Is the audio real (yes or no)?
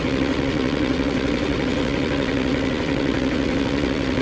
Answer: no